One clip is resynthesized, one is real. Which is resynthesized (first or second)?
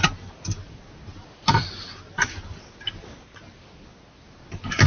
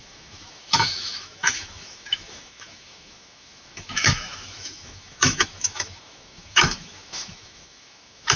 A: second